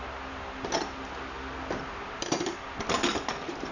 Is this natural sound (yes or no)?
yes